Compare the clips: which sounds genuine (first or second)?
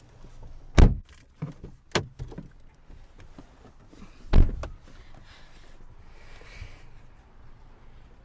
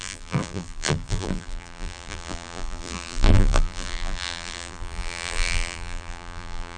first